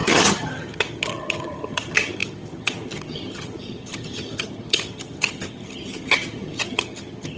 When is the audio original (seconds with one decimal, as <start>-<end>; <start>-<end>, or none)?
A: none

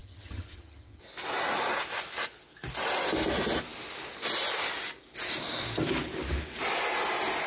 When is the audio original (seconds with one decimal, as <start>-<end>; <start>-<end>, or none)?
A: 1.0-7.5

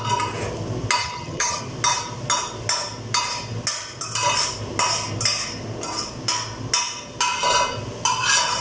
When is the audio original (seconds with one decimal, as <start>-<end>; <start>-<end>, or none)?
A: 0.0-1.0; 1.6-8.6

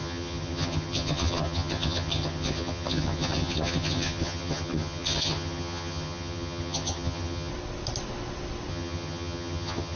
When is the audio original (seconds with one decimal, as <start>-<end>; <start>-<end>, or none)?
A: 7.5-8.7

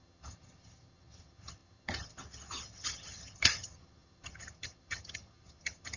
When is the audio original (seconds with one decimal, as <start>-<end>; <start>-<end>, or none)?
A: none

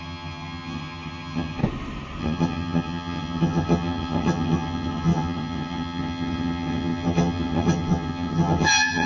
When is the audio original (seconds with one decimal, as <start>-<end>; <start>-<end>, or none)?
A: 1.6-2.2

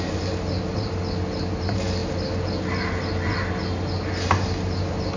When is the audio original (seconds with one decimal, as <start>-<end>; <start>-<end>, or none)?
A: 0.0-5.2

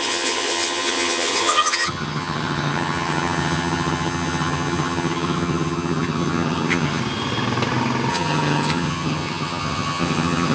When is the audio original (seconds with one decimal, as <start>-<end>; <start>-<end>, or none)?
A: 7.0-8.1